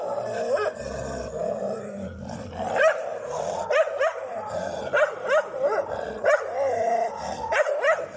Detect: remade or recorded recorded